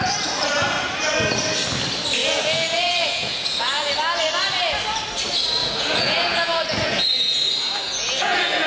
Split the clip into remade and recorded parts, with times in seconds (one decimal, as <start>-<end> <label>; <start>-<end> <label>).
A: 0.0-2.2 recorded; 2.2-3.9 remade; 3.9-5.6 recorded; 5.6-8.7 remade